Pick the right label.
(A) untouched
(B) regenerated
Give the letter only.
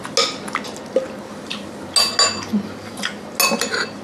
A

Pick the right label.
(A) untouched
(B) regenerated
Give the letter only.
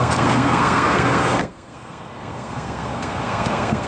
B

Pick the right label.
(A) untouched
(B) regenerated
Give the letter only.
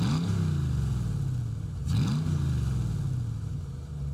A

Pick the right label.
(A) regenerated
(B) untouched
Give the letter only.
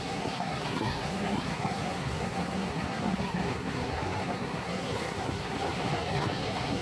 A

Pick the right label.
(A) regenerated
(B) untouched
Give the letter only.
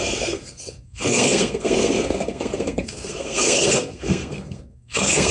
A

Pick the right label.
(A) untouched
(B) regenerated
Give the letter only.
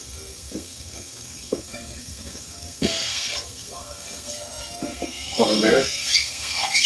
B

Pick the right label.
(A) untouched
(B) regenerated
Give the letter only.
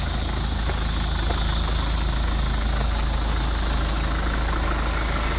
A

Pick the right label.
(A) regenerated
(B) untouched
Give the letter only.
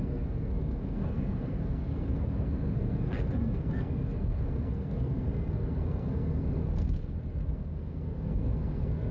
A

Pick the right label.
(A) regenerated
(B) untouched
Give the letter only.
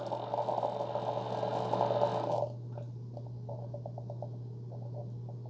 B